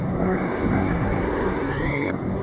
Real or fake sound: fake